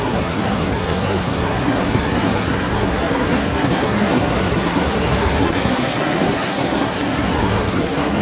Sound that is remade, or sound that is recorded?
remade